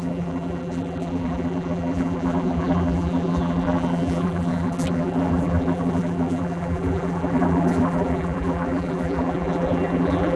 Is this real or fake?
fake